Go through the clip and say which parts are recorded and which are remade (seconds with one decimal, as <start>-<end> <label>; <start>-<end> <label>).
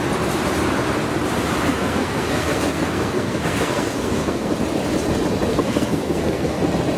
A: 0.0-1.7 recorded; 1.7-4.5 remade; 4.5-5.5 recorded; 5.5-6.6 remade; 6.6-7.0 recorded